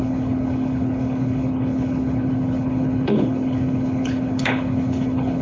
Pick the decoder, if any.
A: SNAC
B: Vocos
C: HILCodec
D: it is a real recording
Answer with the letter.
C